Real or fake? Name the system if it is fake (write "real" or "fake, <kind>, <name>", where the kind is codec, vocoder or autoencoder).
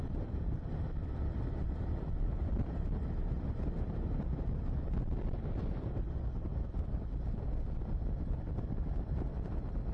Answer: fake, vocoder, BigVGAN v2